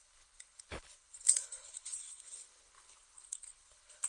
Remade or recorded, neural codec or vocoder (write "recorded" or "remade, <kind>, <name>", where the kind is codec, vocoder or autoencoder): remade, codec, HILCodec